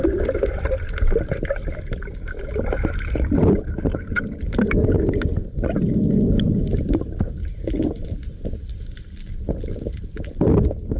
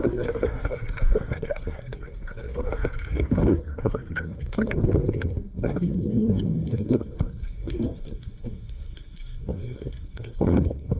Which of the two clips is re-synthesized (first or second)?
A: second